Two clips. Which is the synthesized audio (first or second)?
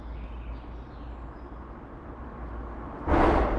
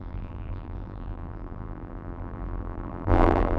second